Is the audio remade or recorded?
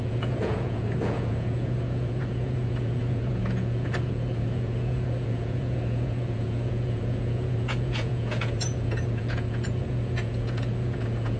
remade